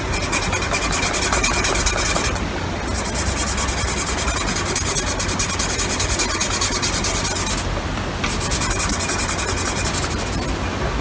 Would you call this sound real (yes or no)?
yes